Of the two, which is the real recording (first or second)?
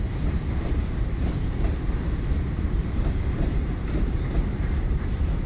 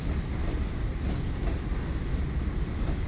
second